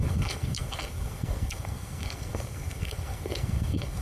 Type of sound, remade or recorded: remade